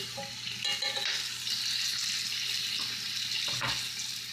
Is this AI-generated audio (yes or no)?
no